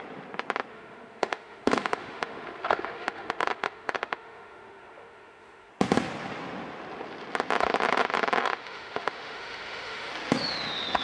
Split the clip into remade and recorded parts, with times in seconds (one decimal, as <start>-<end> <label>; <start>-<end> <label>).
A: 0.0-0.7 recorded; 0.7-5.7 remade; 5.7-8.4 recorded; 8.4-10.1 remade; 10.1-11.0 recorded